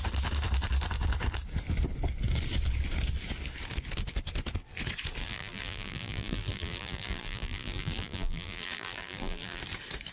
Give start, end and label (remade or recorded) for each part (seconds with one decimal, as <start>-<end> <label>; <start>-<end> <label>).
0.0-5.2 recorded; 5.2-9.6 remade; 9.6-10.1 recorded